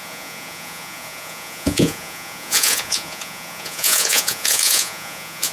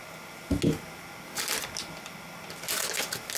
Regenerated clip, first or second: first